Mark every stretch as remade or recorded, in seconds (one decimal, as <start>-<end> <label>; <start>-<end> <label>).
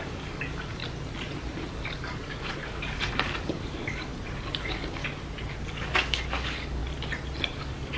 0.0-0.8 remade; 0.8-1.7 recorded; 1.7-4.1 remade; 4.1-4.6 recorded; 4.6-5.0 remade; 5.0-5.7 recorded; 5.7-6.8 remade; 6.8-7.6 recorded; 7.6-8.0 remade